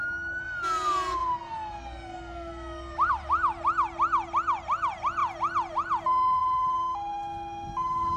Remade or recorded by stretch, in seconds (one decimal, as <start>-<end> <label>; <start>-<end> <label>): 0.0-8.2 recorded